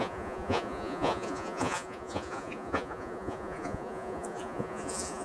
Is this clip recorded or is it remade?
remade